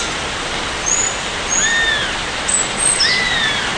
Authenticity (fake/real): real